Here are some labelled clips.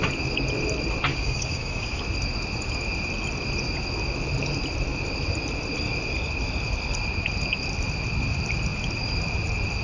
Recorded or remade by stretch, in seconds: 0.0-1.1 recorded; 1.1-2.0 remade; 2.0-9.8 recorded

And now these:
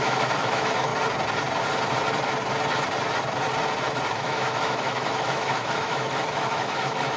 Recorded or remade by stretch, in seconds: 0.0-0.9 remade; 0.9-4.1 recorded; 4.1-7.2 remade